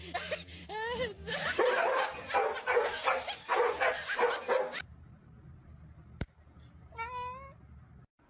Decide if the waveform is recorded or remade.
recorded